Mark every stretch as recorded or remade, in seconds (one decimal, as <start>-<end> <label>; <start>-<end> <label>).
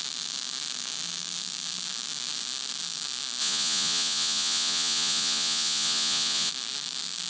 0.0-3.4 recorded; 3.4-6.5 remade; 6.5-7.3 recorded